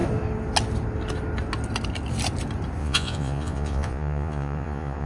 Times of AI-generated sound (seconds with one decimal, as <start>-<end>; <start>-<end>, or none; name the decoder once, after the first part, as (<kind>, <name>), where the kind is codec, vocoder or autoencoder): 2.8-5.1 (vocoder, Vocos)